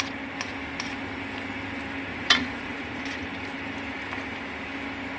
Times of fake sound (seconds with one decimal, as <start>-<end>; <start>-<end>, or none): 2.1-3.0